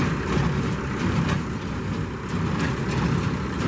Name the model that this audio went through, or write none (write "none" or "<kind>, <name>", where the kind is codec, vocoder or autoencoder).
none